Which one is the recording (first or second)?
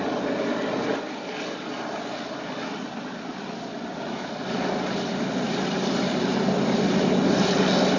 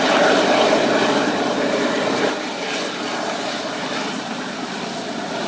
first